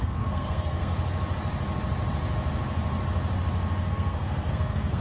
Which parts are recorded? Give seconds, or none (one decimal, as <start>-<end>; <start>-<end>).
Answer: 0.9-3.9